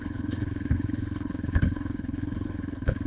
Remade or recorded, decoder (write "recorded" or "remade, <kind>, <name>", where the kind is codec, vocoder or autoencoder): remade, codec, HILCodec